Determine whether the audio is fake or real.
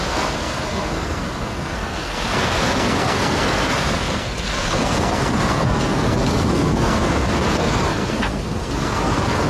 fake